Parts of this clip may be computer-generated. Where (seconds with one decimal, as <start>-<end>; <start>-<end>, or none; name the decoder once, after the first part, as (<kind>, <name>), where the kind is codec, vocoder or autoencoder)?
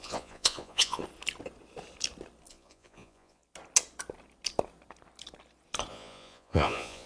0.0-1.0 (vocoder, Vocos); 2.5-3.4; 5.9-7.1